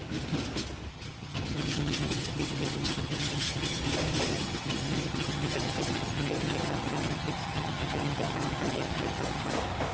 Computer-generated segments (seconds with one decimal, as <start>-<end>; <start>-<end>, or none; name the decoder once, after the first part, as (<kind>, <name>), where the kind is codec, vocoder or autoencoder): 0.9-3.8 (vocoder, HiFi-GAN); 4.3-9.5